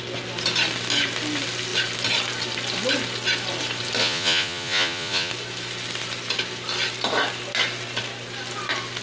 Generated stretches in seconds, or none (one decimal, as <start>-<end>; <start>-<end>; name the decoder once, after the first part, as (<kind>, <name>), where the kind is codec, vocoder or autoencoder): 4.0-5.3 (vocoder, Vocos)